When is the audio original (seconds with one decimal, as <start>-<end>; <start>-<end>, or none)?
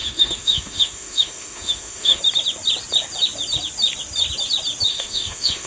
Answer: 2.2-4.9